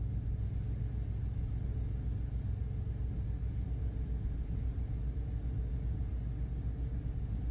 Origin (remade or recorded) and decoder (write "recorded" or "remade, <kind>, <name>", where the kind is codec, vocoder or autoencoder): recorded